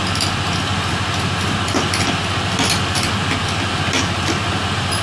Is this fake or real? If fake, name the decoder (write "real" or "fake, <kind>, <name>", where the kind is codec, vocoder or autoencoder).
real